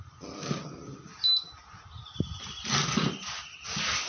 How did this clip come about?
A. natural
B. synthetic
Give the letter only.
A